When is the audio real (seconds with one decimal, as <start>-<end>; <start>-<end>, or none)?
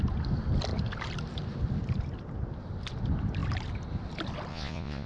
0.0-4.5